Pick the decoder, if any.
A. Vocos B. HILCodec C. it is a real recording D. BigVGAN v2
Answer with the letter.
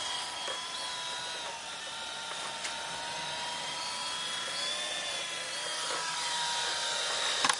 C